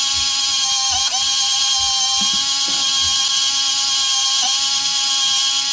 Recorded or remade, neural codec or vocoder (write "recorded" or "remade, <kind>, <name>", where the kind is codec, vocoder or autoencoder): recorded